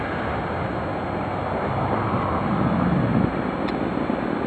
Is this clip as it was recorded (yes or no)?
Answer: yes